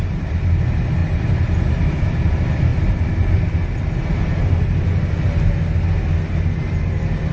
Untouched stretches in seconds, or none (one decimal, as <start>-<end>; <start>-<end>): 0.0-1.0; 1.6-7.3

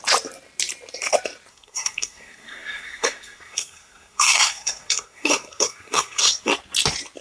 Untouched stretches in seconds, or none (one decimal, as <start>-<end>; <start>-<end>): 0.0-1.5; 6.5-7.2

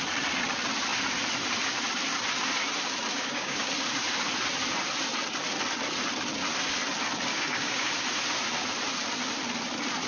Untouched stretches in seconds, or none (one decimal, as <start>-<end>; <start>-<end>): 0.0-3.1; 3.7-7.3; 7.9-10.1